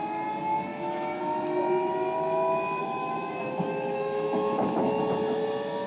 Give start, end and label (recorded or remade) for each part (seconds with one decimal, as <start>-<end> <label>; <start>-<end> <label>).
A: 0.0-0.7 recorded; 0.7-1.2 remade; 1.2-2.8 recorded; 2.8-5.0 remade; 5.0-5.9 recorded